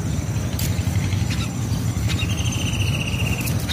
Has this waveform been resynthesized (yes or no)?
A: no